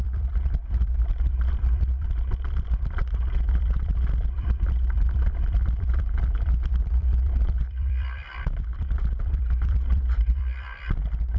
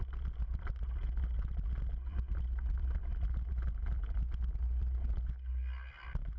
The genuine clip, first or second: second